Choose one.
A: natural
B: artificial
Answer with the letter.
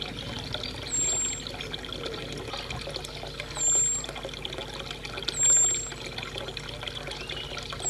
A